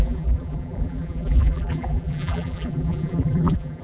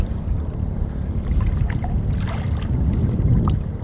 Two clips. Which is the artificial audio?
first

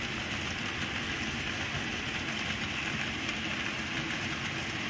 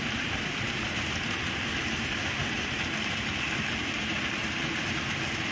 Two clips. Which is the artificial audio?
second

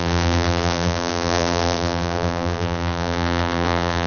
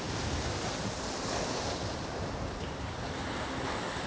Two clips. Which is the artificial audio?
first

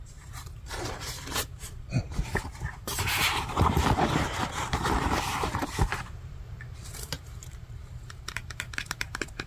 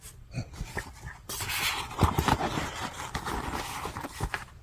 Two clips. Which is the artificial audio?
first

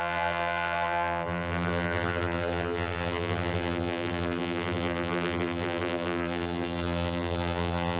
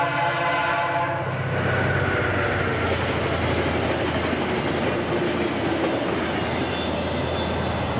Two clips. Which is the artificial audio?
first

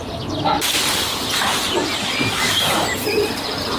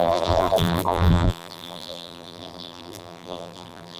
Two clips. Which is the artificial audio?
second